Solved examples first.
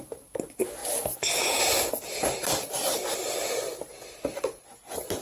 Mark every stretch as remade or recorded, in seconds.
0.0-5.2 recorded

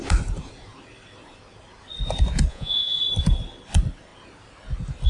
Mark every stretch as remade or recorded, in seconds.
0.0-2.5 recorded; 2.5-3.0 remade; 3.0-5.1 recorded

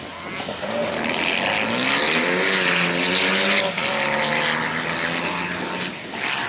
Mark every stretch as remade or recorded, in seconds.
0.0-6.5 recorded

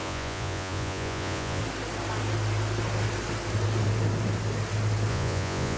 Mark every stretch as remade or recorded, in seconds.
0.0-1.6 remade; 1.6-5.1 recorded; 5.1-5.8 remade

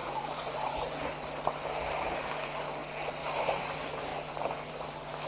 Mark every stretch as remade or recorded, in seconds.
0.0-1.1 remade; 1.1-5.3 recorded